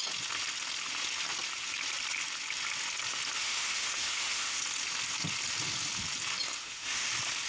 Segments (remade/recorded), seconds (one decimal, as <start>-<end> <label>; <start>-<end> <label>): 0.0-3.4 recorded; 3.4-4.6 remade; 4.6-6.5 recorded; 6.5-7.1 remade; 7.1-7.5 recorded